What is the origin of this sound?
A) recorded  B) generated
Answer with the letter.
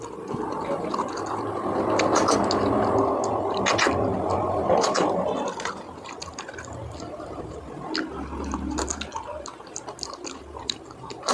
A